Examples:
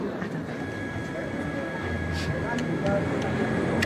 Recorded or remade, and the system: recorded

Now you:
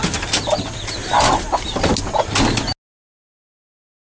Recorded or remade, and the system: recorded